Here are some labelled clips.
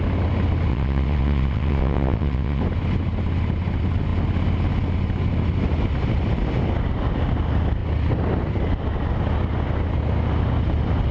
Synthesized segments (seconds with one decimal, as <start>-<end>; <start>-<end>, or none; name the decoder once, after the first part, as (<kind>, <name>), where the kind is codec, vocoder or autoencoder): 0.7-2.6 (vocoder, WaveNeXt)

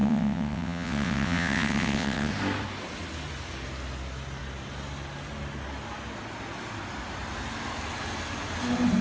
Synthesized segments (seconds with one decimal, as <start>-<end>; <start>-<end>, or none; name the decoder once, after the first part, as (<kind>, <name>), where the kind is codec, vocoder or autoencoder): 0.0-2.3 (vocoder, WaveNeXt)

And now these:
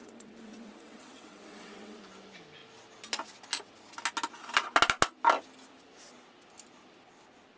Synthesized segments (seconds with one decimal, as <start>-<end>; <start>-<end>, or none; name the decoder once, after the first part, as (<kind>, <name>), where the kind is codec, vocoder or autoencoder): 0.0-2.0 (vocoder, WaveNeXt)